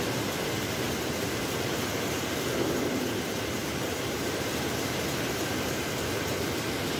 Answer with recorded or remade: remade